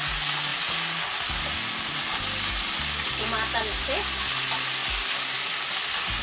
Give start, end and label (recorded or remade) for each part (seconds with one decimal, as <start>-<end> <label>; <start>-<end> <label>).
0.0-6.2 recorded